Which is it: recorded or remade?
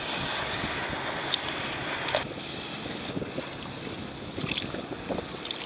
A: recorded